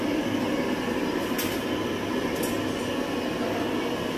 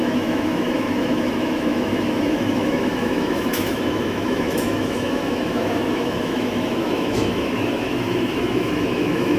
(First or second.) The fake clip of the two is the second